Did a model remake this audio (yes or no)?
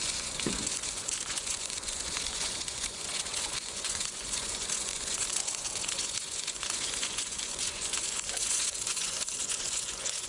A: yes